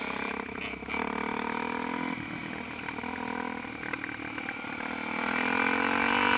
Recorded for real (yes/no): yes